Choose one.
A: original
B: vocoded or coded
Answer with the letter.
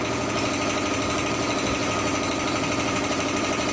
A